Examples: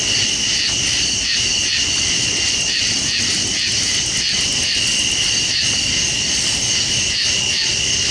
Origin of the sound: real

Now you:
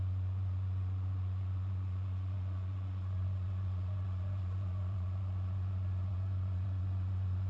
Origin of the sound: fake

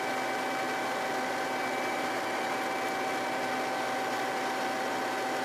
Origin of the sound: real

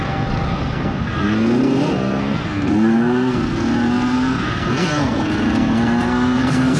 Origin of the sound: fake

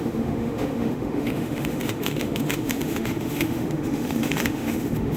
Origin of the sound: fake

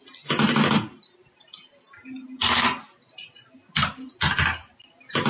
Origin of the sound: real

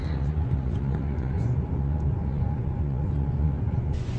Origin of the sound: fake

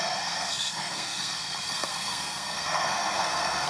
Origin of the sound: fake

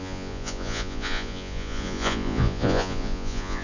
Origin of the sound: fake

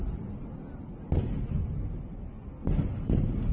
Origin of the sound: real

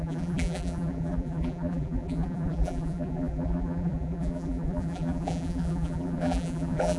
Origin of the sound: fake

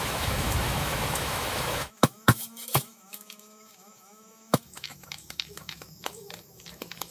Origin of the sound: fake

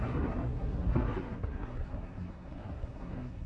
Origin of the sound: fake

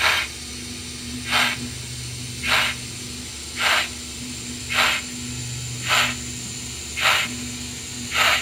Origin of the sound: real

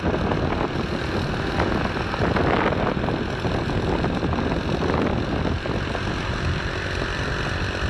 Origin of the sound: real